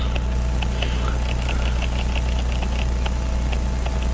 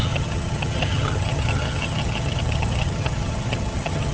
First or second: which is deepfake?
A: second